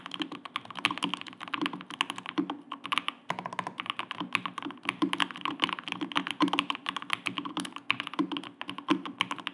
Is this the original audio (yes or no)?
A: yes